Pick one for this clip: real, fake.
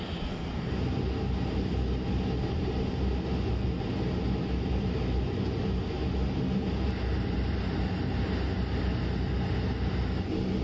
real